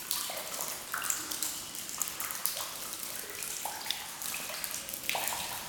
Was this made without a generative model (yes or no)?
yes